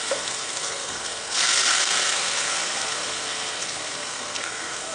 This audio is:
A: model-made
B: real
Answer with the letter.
A